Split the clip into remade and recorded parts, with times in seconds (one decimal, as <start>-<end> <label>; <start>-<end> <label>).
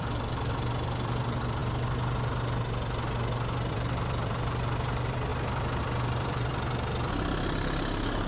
0.0-1.6 remade; 1.6-3.7 recorded; 3.7-5.3 remade; 5.3-5.8 recorded; 5.8-6.5 remade; 6.5-8.3 recorded